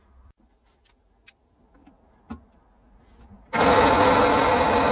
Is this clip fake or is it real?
real